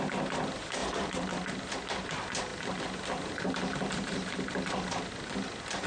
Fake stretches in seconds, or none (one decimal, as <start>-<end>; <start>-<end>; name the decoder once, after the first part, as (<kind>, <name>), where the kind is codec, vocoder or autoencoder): 0.8-1.7 (vocoder, BigVGAN v2)